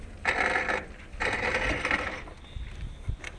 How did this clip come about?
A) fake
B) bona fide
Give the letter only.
B